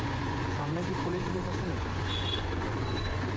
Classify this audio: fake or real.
fake